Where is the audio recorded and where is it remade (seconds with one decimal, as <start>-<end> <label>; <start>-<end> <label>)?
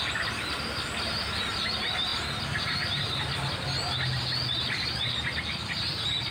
0.0-6.3 recorded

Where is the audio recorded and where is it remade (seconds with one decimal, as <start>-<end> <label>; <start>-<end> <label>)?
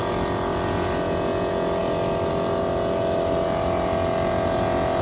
0.0-5.0 recorded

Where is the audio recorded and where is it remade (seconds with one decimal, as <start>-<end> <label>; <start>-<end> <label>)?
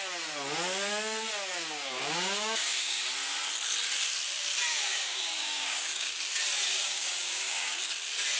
0.0-1.5 recorded; 1.5-3.0 remade; 3.0-4.7 recorded; 4.7-6.2 remade; 6.2-6.7 recorded; 6.7-7.8 remade; 7.8-8.4 recorded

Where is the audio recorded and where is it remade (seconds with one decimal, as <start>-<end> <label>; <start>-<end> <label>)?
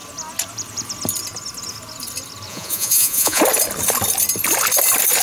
0.0-2.5 recorded; 2.5-3.4 remade; 3.4-5.2 recorded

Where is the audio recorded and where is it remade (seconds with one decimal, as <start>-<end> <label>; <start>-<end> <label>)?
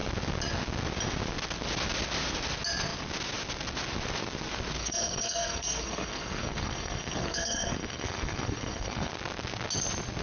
0.0-4.8 recorded; 4.8-9.1 remade; 9.1-10.2 recorded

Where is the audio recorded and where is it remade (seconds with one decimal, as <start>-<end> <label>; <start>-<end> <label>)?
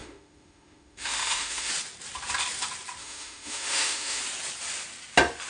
0.0-1.7 remade; 1.7-3.0 recorded; 3.0-4.2 remade; 4.2-5.5 recorded